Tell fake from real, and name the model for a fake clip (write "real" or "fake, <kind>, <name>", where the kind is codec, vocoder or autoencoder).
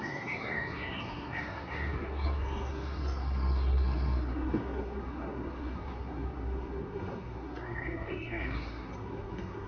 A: fake, codec, SNAC